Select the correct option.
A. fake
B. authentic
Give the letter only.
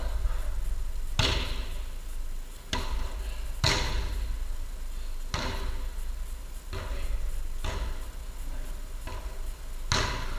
B